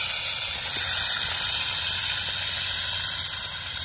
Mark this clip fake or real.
real